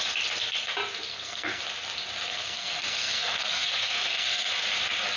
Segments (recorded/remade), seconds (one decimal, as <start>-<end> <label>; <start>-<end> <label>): 0.0-1.1 recorded; 1.1-1.6 remade; 1.6-2.3 recorded; 2.3-4.5 remade; 4.5-5.2 recorded